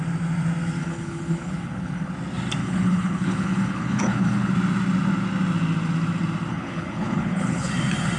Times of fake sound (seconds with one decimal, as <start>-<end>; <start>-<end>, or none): 0.8-2.1; 2.6-4.5; 6.5-7.7